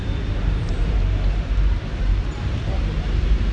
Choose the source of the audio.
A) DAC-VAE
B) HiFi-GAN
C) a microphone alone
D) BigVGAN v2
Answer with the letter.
D